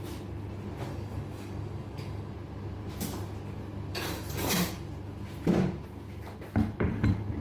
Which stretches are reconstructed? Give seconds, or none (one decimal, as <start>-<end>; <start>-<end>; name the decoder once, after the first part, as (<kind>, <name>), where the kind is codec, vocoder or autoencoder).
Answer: 0.9-2.3 (codec, DAC); 3.9-4.7